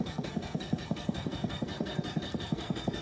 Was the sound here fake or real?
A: fake